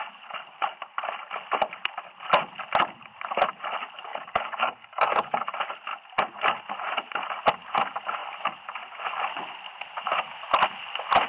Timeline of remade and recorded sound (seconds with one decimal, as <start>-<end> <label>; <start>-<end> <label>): 0.0-4.1 recorded; 4.1-5.4 remade; 5.4-11.3 recorded